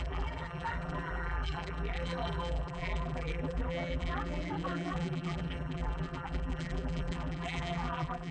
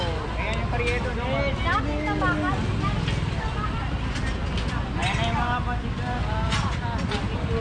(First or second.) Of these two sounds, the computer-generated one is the first